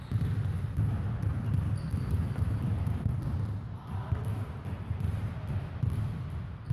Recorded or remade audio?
recorded